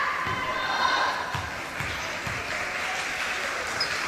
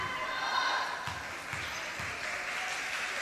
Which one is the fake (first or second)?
first